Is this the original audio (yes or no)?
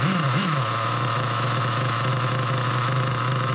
no